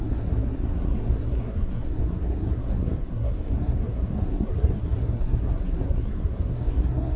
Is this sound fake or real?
fake